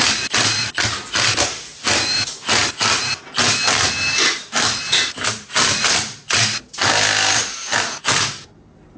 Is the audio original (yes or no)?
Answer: yes